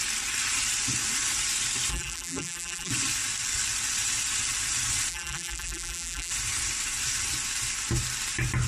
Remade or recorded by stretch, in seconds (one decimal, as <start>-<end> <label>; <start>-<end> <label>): 0.0-1.9 recorded; 1.9-2.9 remade; 2.9-5.1 recorded; 5.1-6.3 remade; 6.3-8.7 recorded